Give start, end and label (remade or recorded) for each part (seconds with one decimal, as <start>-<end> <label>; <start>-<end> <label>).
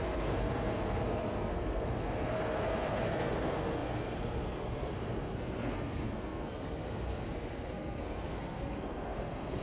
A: 0.0-9.6 remade